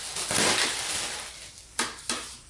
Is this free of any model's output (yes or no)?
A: yes